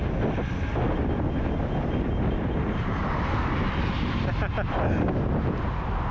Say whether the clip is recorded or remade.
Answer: recorded